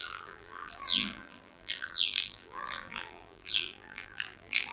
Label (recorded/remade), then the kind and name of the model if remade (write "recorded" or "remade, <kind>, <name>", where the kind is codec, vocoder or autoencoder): remade, vocoder, BigVGAN v2